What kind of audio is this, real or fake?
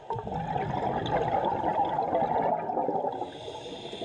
real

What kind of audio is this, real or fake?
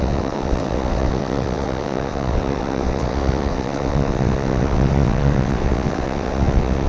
fake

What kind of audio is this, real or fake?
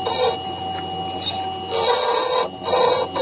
real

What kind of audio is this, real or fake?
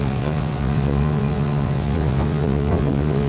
fake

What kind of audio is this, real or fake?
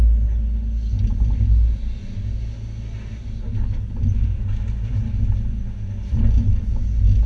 real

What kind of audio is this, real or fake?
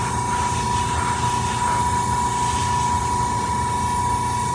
real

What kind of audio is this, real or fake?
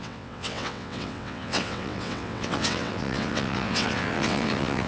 fake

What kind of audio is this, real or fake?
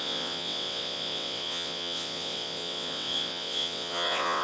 fake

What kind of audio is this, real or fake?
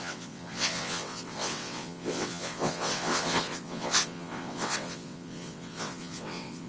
fake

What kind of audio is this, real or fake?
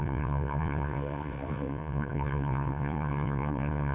fake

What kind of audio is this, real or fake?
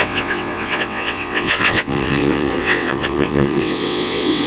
fake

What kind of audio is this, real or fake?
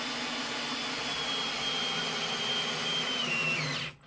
real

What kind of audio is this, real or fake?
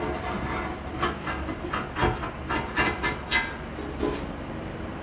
real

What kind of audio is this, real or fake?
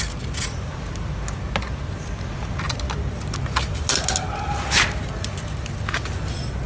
real